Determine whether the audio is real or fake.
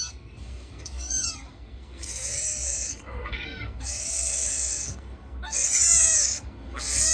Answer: fake